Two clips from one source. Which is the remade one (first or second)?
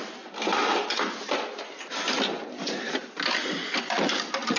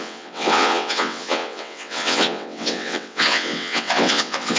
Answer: second